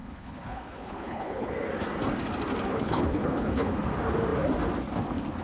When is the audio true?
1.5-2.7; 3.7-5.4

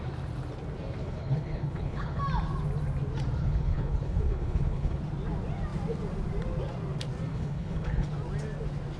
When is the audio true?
0.0-1.0; 2.2-3.4; 5.0-7.3; 8.1-9.0

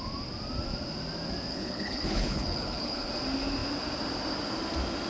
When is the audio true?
0.0-1.5; 3.1-5.1

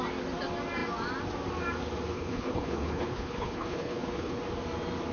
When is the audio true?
0.0-2.1; 4.4-5.1

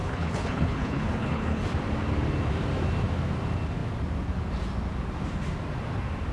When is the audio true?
1.6-6.3

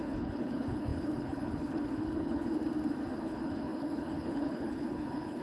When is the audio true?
2.6-3.2